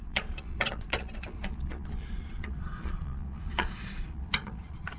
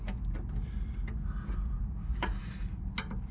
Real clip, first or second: second